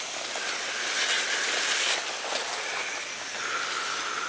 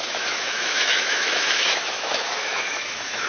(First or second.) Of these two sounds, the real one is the first